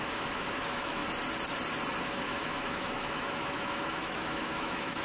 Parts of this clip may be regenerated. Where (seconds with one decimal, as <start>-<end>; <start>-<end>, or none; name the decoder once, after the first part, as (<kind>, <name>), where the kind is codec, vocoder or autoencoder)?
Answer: 0.0-1.0 (autoencoder, DAC-VAE); 2.0-5.0